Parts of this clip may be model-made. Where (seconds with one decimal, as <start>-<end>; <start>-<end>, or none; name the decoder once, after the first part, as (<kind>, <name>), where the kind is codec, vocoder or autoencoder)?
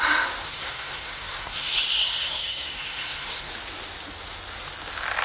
0.4-3.5 (codec, SNAC)